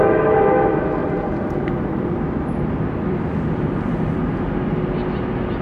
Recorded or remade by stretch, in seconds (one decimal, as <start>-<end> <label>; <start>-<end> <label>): 0.0-1.0 recorded; 1.0-4.4 remade; 4.4-5.6 recorded